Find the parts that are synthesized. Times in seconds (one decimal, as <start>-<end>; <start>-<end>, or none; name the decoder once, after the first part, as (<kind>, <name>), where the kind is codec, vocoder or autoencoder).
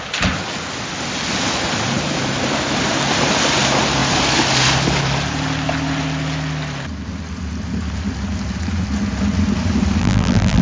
10.0-10.6 (vocoder, BigVGAN v2)